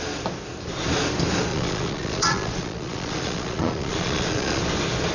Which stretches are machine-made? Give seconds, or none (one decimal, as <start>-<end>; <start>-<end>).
1.5-4.6